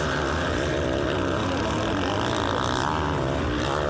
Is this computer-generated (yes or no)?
no